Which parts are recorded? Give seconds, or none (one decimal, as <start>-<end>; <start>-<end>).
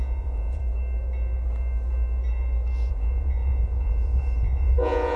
0.6-2.9